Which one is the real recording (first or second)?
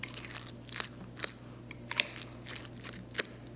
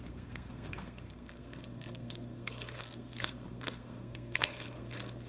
first